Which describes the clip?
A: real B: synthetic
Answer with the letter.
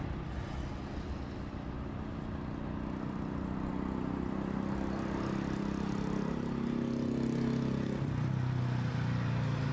A